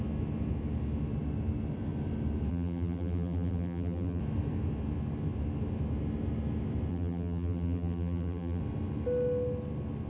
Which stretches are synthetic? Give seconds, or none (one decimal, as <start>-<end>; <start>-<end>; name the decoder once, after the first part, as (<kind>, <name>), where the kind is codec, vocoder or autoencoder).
2.5-4.2 (vocoder, BigVGAN v2); 6.9-8.6